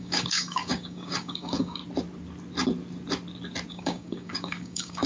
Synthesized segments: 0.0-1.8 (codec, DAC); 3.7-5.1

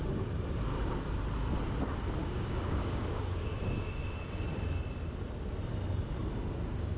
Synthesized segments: 2.2-3.6 (codec, DAC)

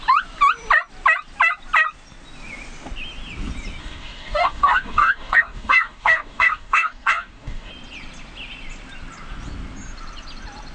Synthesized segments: 3.8-7.7 (codec, DAC)

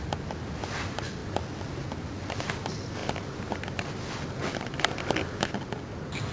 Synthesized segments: none

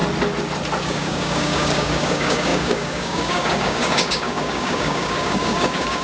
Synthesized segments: 0.8-6.0 (codec, DAC)